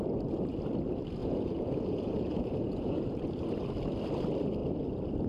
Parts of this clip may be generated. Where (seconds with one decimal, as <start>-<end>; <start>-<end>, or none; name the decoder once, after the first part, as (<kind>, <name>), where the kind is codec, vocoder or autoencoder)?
1.2-3.2 (vocoder, Vocos)